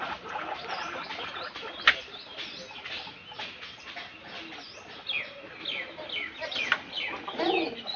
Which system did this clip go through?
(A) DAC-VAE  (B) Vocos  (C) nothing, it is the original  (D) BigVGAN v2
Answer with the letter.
C